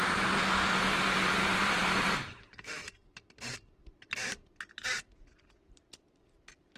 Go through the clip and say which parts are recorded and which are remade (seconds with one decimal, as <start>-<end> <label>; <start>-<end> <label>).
0.0-2.8 recorded; 2.8-5.8 remade; 5.8-6.8 recorded